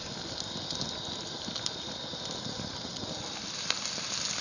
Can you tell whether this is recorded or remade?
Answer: recorded